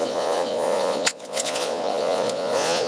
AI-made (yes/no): yes